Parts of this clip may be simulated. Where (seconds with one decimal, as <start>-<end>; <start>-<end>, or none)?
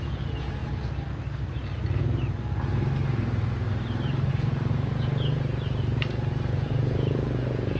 0.0-0.6; 4.3-7.8